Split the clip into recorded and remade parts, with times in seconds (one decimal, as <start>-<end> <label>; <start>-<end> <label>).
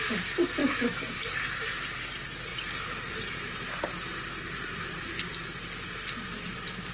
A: 0.0-0.6 recorded; 0.6-1.3 remade; 1.3-6.9 recorded